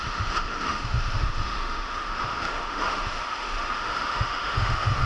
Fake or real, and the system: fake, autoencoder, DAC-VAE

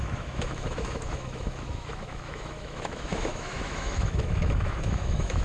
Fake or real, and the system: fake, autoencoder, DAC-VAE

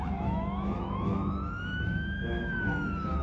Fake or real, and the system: fake, autoencoder, DAC-VAE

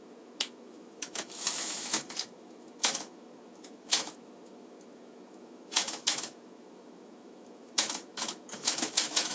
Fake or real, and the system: fake, autoencoder, DAC-VAE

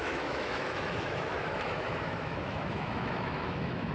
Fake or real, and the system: fake, autoencoder, DAC-VAE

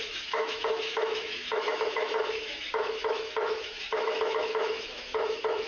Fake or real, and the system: fake, autoencoder, DAC-VAE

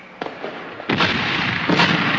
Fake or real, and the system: real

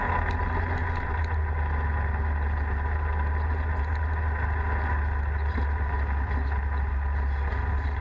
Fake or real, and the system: real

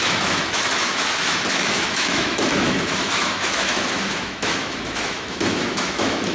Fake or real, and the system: fake, autoencoder, DAC-VAE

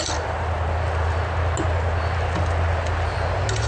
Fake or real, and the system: real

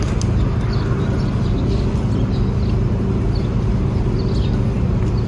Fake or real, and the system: real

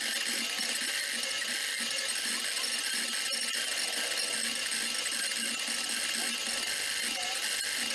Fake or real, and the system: real